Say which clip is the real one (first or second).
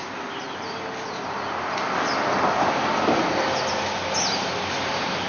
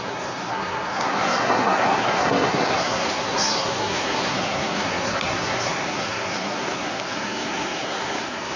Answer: first